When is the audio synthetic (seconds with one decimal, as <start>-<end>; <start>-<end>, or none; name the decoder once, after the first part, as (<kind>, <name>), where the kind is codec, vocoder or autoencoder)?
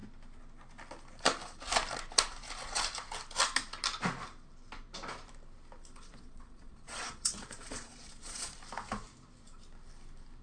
6.1-8.6 (vocoder, Vocos)